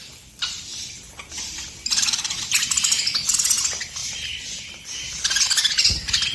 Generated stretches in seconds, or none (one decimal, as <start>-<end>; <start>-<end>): 0.0-3.3; 4.0-5.1